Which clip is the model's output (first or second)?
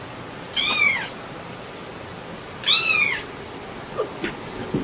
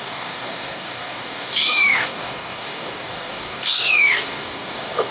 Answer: second